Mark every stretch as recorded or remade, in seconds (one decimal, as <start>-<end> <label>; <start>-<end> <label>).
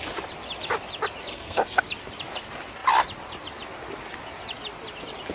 0.0-1.3 recorded; 1.3-1.8 remade; 1.8-5.3 recorded